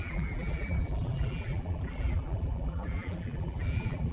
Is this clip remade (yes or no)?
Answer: yes